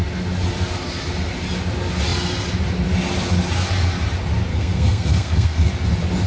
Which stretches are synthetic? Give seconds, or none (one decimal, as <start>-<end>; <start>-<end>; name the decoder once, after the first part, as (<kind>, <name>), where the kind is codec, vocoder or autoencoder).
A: 4.5-5.7 (codec, SNAC)